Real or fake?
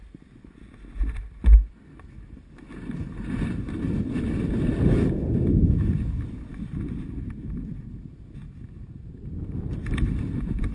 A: real